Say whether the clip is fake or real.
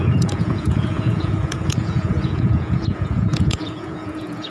fake